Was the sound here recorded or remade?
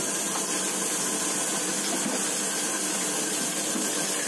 recorded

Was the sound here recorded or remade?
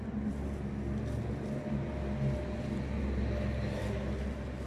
recorded